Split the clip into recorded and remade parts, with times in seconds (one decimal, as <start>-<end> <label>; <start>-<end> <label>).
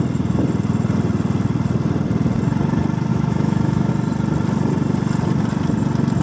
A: 0.0-3.1 recorded; 3.1-3.9 remade; 3.9-6.2 recorded